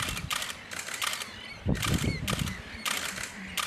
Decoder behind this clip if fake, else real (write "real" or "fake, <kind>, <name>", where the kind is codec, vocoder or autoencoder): real